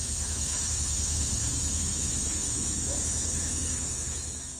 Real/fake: fake